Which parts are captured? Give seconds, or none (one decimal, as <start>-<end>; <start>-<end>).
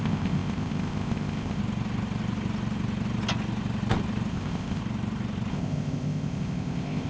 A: 1.6-4.3; 4.8-5.5